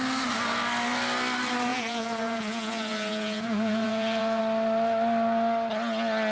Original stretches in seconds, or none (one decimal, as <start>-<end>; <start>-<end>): 0.0-1.7; 4.4-6.3

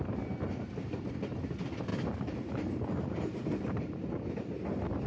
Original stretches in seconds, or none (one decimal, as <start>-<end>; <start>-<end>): 0.0-1.9; 4.1-5.1